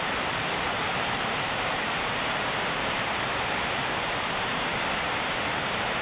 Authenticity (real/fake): fake